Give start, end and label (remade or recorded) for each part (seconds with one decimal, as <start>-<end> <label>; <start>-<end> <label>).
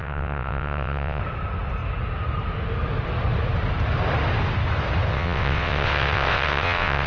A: 0.0-1.2 remade; 1.2-5.1 recorded; 5.1-7.1 remade